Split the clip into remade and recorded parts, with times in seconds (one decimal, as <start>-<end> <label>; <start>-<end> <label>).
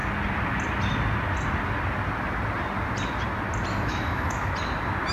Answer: 0.0-3.7 recorded; 3.7-4.5 remade; 4.5-5.1 recorded